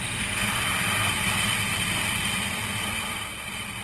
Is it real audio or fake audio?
real